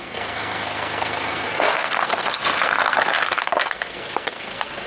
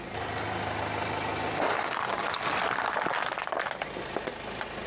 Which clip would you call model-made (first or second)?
first